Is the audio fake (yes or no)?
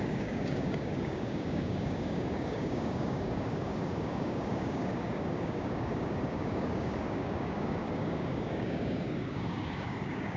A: yes